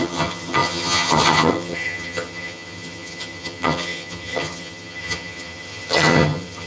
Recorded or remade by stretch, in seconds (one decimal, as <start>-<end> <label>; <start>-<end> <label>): 0.0-6.7 remade